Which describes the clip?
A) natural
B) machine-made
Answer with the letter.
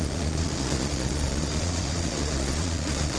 B